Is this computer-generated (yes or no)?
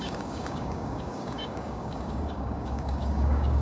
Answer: yes